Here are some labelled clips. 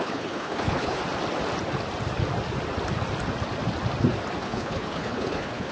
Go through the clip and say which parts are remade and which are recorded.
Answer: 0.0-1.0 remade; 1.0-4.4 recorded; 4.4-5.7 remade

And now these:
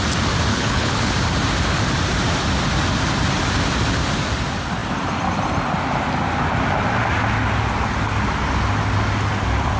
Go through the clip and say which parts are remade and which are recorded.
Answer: 0.0-0.5 recorded; 0.5-1.1 remade; 1.1-9.8 recorded

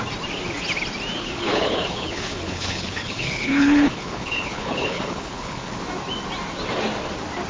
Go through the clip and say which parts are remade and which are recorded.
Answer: 0.0-1.2 recorded; 1.2-5.7 remade; 5.7-7.5 recorded

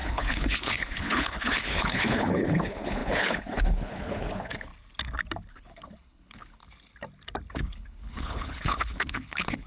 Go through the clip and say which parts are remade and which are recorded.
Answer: 0.0-4.7 remade; 4.7-5.5 recorded; 5.5-6.6 remade; 6.6-7.5 recorded; 7.5-9.7 remade

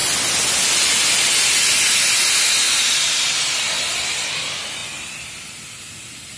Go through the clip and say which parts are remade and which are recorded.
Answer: 0.0-6.4 recorded

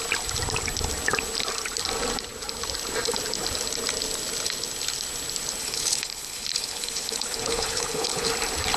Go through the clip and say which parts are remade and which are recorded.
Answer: 0.0-5.6 recorded; 5.6-8.3 remade; 8.3-8.8 recorded